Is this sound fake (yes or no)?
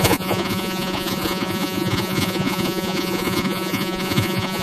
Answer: yes